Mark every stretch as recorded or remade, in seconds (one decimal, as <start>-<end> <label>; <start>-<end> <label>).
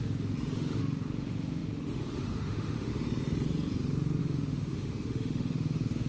0.0-2.9 remade; 2.9-4.2 recorded; 4.2-6.1 remade